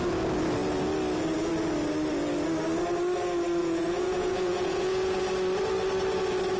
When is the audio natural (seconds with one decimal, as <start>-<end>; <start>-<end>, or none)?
0.0-3.6; 5.2-6.6